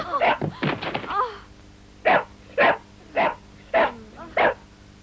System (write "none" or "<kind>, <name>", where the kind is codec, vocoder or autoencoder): none